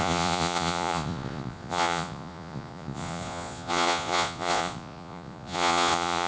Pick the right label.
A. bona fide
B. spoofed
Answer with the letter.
B